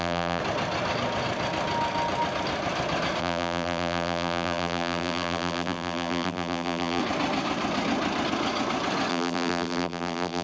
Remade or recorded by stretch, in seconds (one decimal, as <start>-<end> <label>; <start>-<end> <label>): 0.0-0.4 remade; 0.4-3.2 recorded; 3.2-7.0 remade; 7.0-9.1 recorded; 9.1-10.4 remade